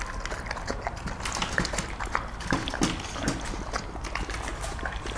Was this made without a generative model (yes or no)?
yes